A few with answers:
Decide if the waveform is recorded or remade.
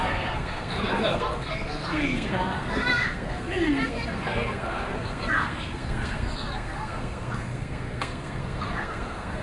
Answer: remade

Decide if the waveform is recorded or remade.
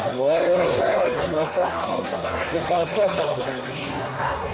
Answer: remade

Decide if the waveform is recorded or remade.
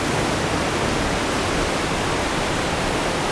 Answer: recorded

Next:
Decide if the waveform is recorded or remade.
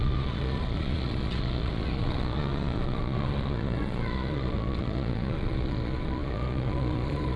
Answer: remade